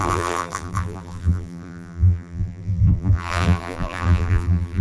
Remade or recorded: remade